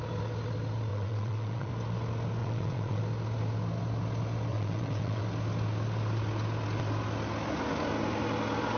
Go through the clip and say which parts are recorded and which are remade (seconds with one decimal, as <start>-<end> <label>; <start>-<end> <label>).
0.0-0.9 recorded; 0.9-1.7 remade; 1.7-2.4 recorded; 2.4-3.0 remade; 3.0-4.5 recorded; 4.5-5.2 remade; 5.2-8.8 recorded